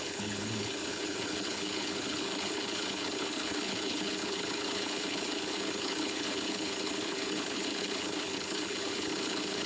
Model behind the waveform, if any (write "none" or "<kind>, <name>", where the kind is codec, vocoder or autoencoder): codec, HILCodec